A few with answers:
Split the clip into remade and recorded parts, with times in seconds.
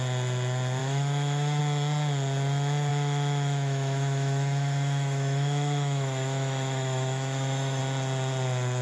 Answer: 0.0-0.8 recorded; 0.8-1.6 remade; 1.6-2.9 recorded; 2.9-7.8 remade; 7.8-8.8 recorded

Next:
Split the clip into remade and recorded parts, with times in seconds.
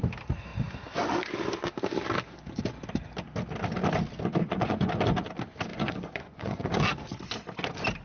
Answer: 0.0-4.4 recorded; 4.4-4.9 remade; 4.9-5.7 recorded; 5.7-6.7 remade; 6.7-8.0 recorded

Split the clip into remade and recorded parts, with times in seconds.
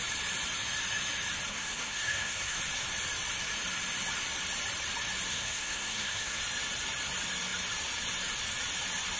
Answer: 0.0-1.5 recorded; 1.5-2.6 remade; 2.6-5.3 recorded; 5.3-6.4 remade; 6.4-9.2 recorded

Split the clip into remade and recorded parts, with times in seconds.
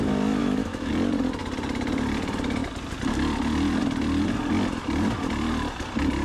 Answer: 0.0-0.4 recorded; 0.4-0.9 remade; 0.9-6.2 recorded